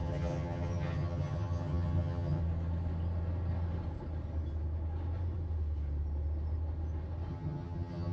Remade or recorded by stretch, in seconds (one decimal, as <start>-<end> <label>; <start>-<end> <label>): 0.0-2.4 remade; 2.4-7.3 recorded; 7.3-8.1 remade